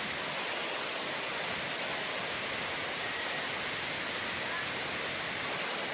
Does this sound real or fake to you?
real